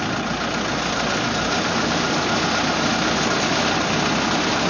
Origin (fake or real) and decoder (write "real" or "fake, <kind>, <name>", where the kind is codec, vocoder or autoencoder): real